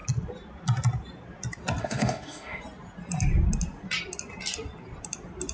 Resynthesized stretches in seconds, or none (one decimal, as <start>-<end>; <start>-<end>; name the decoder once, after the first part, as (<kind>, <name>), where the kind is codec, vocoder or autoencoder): 1.8-2.6 (autoencoder, DAC-VAE)